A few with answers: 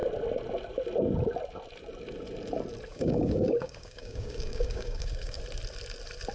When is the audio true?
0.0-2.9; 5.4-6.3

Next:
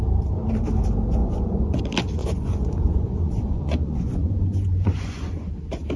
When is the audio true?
0.0-1.2; 1.8-2.2; 5.5-6.0